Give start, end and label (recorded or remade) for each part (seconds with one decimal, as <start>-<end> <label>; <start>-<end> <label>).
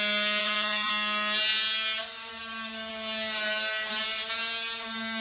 0.0-0.4 recorded; 0.4-0.9 remade; 0.9-5.2 recorded